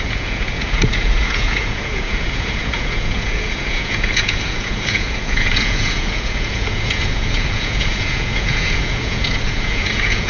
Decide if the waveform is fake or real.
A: fake